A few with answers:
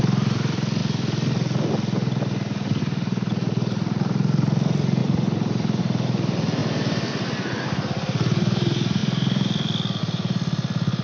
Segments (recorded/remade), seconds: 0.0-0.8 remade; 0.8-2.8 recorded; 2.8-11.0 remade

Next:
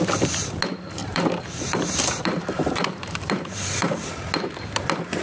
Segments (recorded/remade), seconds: 0.0-1.0 recorded; 1.0-4.1 remade; 4.1-5.2 recorded

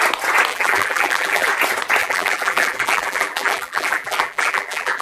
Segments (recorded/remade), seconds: 0.0-0.5 recorded; 0.5-1.5 remade; 1.5-2.0 recorded; 2.0-5.0 remade

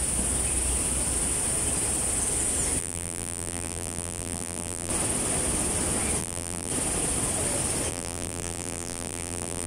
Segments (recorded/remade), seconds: 0.0-2.8 recorded; 2.8-4.9 remade; 4.9-6.2 recorded; 6.2-6.7 remade; 6.7-7.9 recorded; 7.9-9.7 remade

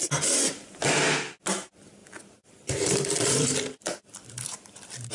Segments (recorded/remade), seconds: 0.0-2.0 recorded; 2.0-5.1 remade

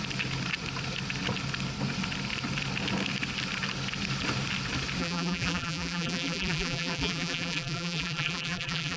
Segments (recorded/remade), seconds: 0.0-5.0 recorded; 5.0-9.0 remade

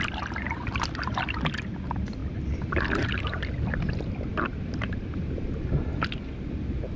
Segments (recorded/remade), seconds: 0.0-2.2 recorded; 2.2-2.8 remade; 2.8-4.3 recorded; 4.3-4.9 remade; 4.9-7.0 recorded

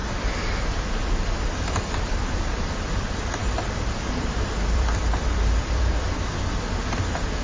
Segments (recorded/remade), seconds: 0.0-0.7 recorded; 0.7-7.4 remade